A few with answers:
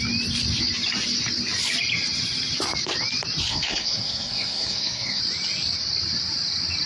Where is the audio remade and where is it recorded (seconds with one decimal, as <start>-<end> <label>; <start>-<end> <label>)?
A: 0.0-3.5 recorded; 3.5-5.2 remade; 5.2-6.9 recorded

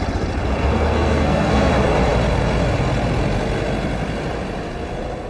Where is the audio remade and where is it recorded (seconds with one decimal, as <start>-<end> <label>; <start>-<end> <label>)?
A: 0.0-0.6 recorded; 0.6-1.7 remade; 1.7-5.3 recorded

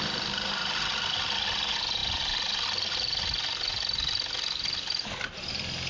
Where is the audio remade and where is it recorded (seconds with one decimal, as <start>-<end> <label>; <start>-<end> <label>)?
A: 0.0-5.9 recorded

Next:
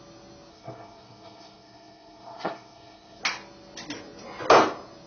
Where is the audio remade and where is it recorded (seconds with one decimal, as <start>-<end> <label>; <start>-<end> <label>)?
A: 0.0-0.5 recorded; 0.5-3.2 remade; 3.2-5.1 recorded

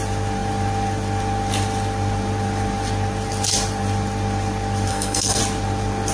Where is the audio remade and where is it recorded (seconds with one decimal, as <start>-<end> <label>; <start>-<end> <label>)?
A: 0.0-4.9 recorded; 4.9-5.4 remade; 5.4-6.1 recorded